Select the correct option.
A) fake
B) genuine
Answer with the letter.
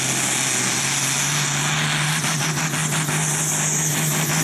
B